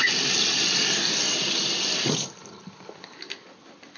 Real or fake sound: real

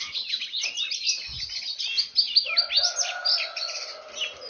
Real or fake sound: real